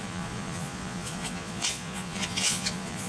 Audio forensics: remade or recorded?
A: remade